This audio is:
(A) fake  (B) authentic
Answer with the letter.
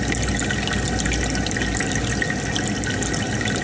B